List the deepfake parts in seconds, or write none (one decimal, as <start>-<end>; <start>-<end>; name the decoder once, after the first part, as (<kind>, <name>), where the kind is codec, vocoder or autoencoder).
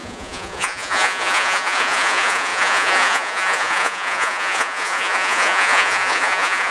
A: 0.0-6.7 (vocoder, Vocos)